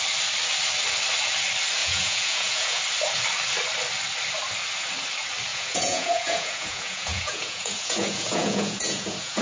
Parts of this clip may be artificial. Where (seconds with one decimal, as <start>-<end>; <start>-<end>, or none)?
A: 1.8-2.8; 5.5-9.4